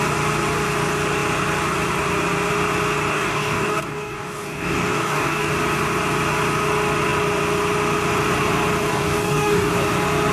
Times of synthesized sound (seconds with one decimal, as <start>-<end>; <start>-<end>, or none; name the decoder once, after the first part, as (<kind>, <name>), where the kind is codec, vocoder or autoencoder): 3.1-5.5 (codec, DAC); 8.9-9.7